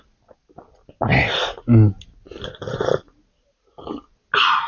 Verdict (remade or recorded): recorded